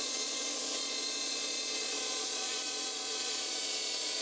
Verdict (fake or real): fake